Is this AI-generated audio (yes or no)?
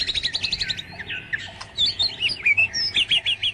no